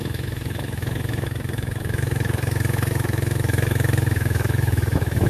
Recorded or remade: remade